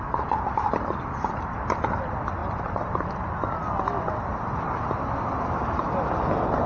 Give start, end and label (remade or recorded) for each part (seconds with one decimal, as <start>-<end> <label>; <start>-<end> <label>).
0.0-2.4 recorded; 2.4-3.1 remade; 3.1-6.7 recorded